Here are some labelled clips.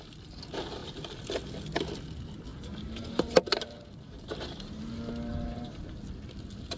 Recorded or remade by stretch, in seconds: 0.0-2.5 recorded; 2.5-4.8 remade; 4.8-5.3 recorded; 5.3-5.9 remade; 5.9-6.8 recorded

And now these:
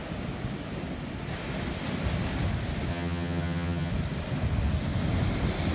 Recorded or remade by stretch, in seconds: 0.0-2.9 recorded; 2.9-3.9 remade; 3.9-5.7 recorded

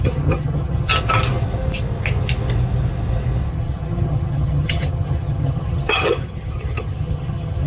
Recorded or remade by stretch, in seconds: 0.0-0.9 remade; 0.9-3.5 recorded; 3.5-7.7 remade

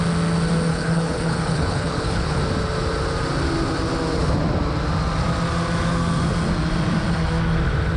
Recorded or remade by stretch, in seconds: 0.0-0.7 recorded; 0.7-2.4 remade; 2.4-8.0 recorded

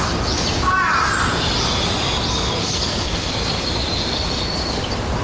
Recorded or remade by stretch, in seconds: 0.0-2.6 recorded; 2.6-3.3 remade; 3.3-5.2 recorded

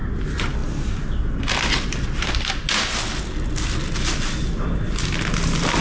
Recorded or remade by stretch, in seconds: 0.0-5.8 recorded

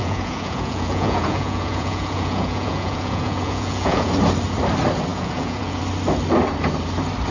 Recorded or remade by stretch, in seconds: 0.0-4.1 remade; 4.1-5.1 recorded; 5.1-5.8 remade; 5.8-7.3 recorded

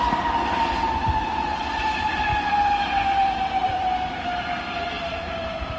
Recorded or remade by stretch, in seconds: 0.0-1.0 recorded; 1.0-1.6 remade; 1.6-3.6 recorded; 3.6-5.2 remade; 5.2-5.8 recorded